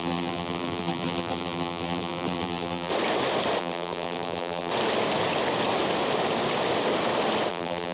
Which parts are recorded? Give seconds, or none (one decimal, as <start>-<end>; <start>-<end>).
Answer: 2.9-3.6; 4.7-7.5